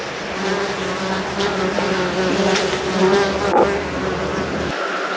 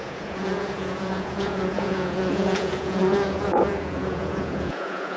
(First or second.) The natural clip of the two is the first